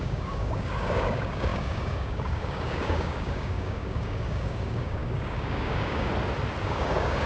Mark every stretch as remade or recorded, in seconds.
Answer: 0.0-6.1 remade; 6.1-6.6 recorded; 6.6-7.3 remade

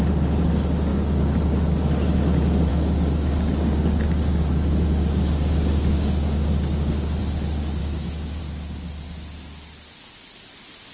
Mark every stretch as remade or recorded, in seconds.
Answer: 0.0-0.9 recorded; 0.9-1.8 remade; 1.8-2.7 recorded; 2.7-7.2 remade; 7.2-7.8 recorded; 7.8-8.4 remade; 8.4-10.9 recorded

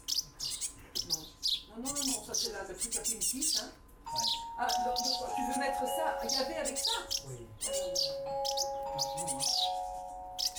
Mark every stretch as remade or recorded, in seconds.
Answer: 0.0-2.1 recorded; 2.1-2.7 remade; 2.7-4.8 recorded; 4.8-5.8 remade; 5.8-9.5 recorded; 9.5-10.1 remade; 10.1-10.6 recorded

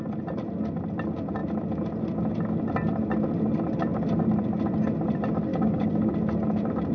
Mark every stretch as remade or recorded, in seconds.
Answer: 0.0-5.5 recorded; 5.5-6.1 remade; 6.1-6.9 recorded